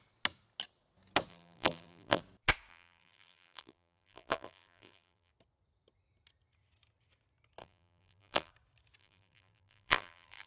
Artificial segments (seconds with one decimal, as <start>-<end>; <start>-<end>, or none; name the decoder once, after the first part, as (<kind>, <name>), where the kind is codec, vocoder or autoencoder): 1.3-2.2 (vocoder, BigVGAN v2); 2.7-5.3; 7.6-8.5; 9.0-10.5